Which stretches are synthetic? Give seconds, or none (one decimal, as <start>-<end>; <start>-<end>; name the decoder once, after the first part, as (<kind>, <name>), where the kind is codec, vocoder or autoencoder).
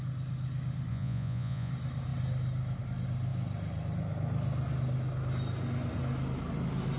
0.9-1.7 (vocoder, Vocos)